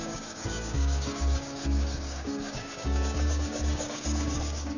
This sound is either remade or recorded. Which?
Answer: remade